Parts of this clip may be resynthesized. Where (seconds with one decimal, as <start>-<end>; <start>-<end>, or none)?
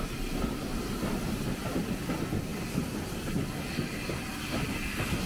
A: none